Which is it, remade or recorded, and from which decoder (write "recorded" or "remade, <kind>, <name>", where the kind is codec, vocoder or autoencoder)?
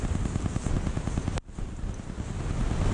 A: recorded